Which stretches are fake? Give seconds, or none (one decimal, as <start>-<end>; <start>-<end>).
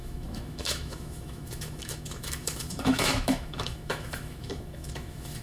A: 0.0-5.4